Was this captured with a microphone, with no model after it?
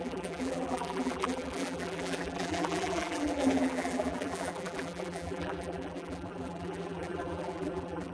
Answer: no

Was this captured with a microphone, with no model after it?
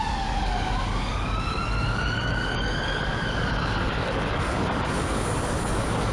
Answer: no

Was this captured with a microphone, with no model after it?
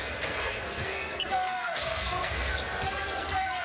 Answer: no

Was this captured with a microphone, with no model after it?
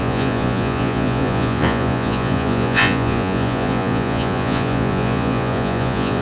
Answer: no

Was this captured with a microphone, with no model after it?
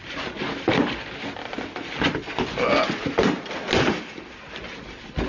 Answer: yes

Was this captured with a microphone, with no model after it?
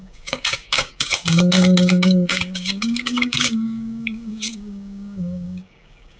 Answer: no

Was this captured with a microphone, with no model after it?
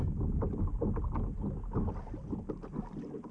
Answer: yes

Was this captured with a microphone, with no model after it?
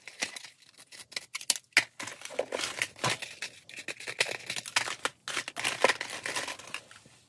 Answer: yes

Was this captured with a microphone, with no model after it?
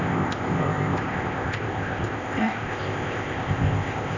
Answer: no